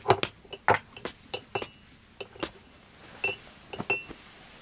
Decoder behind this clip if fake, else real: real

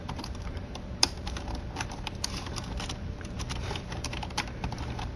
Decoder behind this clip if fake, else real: fake, vocoder, BigVGAN v2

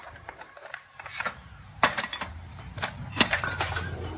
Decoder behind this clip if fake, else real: fake, vocoder, BigVGAN v2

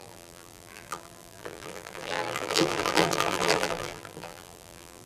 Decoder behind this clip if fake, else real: fake, vocoder, BigVGAN v2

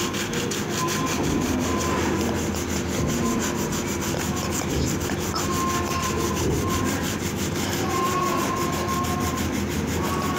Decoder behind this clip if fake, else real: real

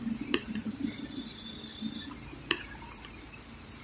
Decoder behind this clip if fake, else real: fake, vocoder, BigVGAN v2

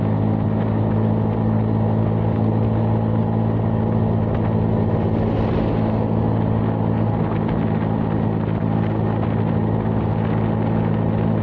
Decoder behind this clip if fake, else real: real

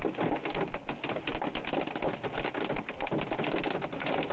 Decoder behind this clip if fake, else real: real